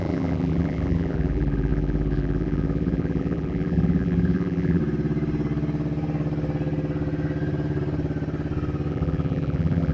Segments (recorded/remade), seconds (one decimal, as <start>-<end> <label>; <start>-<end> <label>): 0.0-4.8 remade; 4.8-8.9 recorded; 8.9-9.9 remade